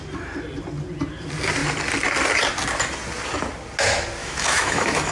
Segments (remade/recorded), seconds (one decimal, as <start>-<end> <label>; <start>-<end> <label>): 0.0-4.2 recorded; 4.2-5.1 remade